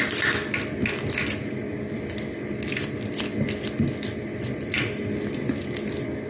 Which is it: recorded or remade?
recorded